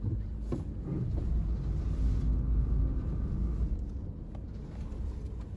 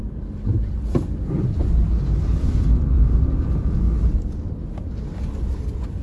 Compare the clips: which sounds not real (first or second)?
second